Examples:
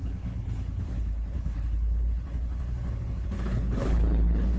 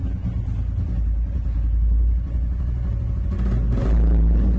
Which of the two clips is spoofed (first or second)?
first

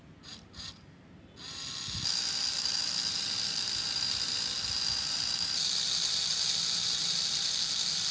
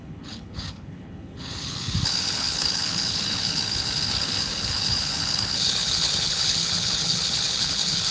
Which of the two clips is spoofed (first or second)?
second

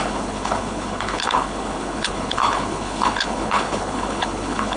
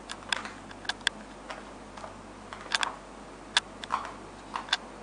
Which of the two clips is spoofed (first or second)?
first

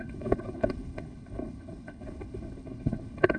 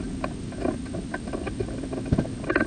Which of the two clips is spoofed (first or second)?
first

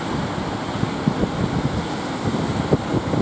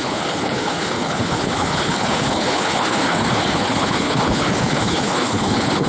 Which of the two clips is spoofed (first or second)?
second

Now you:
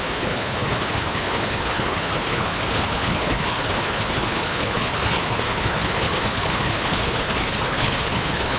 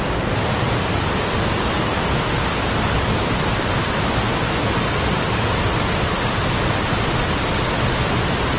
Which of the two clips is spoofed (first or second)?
first